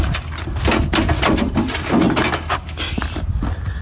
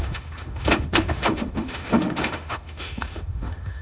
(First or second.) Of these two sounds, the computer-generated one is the second